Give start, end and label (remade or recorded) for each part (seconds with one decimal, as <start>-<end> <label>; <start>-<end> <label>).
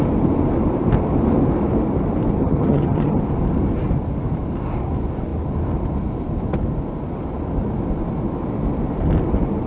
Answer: 0.0-2.4 recorded; 2.4-3.2 remade; 3.2-9.7 recorded